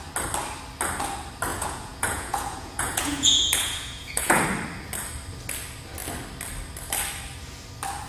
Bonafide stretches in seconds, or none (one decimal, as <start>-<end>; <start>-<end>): 0.0-1.5; 4.4-8.1